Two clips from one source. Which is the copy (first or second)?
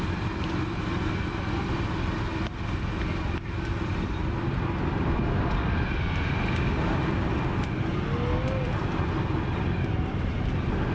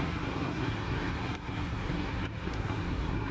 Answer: second